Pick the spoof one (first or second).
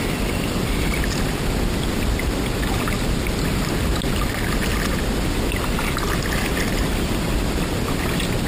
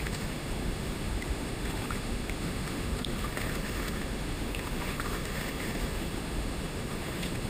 second